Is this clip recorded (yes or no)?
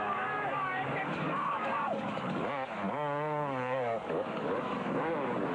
no